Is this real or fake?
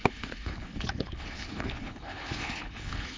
fake